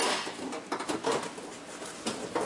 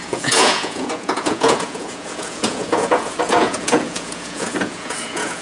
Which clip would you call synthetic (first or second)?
second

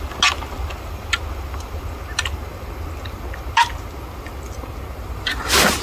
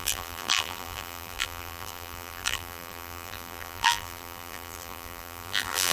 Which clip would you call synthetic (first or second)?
second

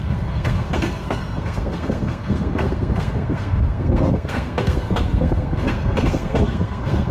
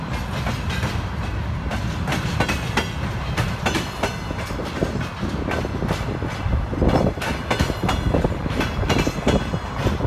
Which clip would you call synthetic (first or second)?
first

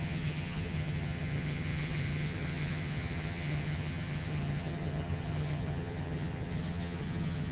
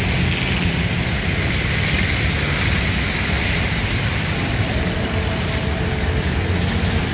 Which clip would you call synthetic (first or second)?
first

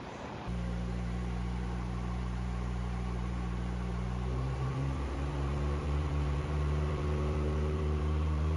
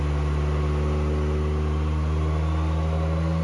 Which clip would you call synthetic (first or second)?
first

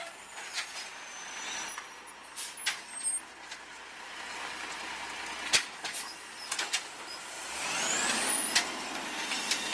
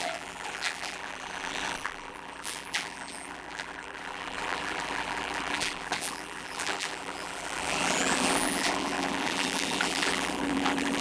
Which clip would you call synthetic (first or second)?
second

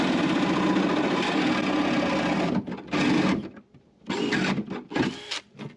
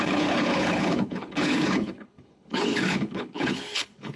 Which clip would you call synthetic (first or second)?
second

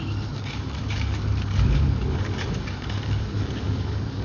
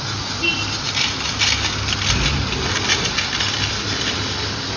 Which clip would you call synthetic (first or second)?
first